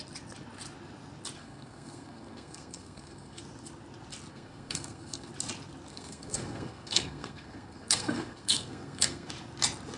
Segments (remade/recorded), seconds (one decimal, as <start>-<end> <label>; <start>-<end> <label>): 0.0-1.4 recorded; 1.4-3.4 remade; 3.4-4.3 recorded; 4.3-5.3 remade; 5.3-5.9 recorded; 5.9-9.3 remade; 9.3-10.0 recorded

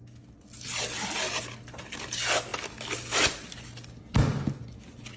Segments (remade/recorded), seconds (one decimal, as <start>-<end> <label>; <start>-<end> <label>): 0.0-5.2 recorded

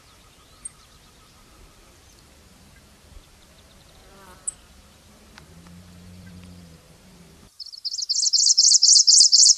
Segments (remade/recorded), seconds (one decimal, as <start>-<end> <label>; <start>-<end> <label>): 0.0-7.8 remade; 7.8-8.3 recorded; 8.3-9.6 remade